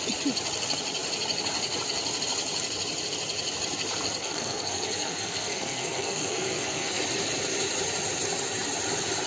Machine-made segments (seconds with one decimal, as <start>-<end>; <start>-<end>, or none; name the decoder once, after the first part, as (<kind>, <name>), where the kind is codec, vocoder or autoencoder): 4.2-7.0 (codec, SNAC)